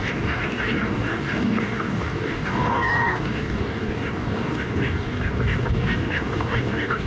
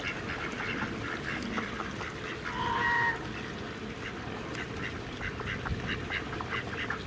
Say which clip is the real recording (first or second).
second